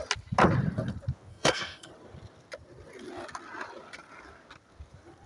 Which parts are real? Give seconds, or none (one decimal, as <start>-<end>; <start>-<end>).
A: 0.0-1.3; 1.9-5.3